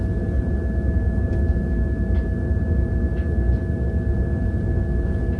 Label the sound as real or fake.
real